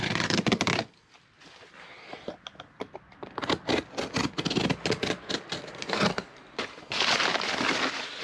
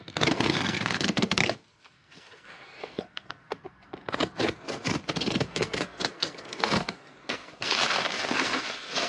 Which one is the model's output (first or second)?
second